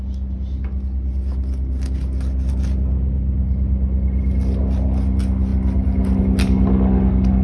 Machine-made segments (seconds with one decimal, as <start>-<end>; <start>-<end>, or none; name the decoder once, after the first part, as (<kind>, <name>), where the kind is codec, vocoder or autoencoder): none